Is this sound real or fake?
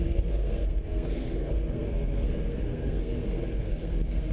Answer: fake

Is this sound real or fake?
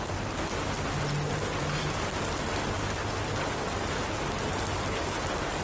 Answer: real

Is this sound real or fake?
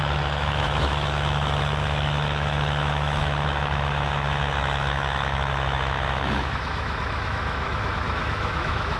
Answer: fake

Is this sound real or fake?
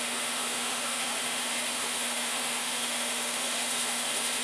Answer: fake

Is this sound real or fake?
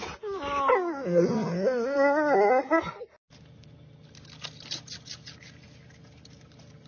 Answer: real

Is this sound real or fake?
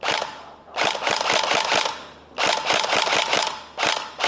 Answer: real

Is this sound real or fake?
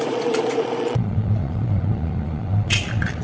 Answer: fake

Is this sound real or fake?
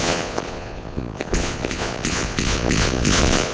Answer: fake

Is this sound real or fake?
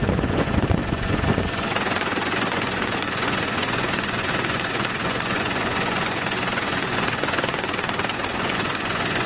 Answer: fake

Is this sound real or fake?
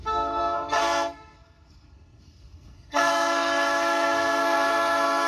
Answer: fake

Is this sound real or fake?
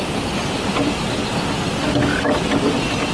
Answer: real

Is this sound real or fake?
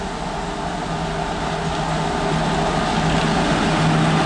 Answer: real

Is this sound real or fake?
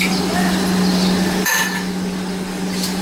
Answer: real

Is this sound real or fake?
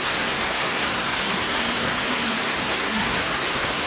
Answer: fake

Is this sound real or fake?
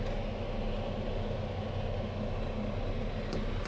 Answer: real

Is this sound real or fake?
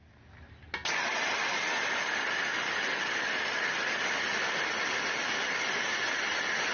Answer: real